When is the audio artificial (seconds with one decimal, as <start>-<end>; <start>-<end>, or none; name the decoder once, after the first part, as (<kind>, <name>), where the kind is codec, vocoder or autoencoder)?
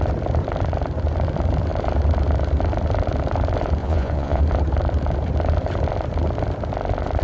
3.8-4.4 (vocoder, Vocos)